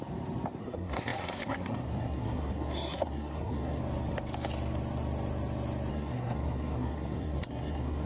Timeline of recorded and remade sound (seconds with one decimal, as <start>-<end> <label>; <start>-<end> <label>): 0.0-0.6 recorded; 0.6-3.8 remade; 3.8-5.9 recorded; 5.9-8.1 remade